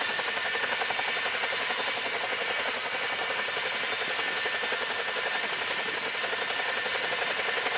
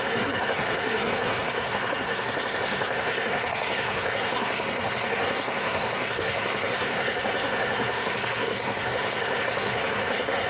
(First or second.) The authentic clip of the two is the first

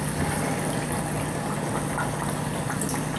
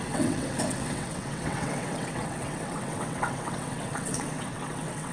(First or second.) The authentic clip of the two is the first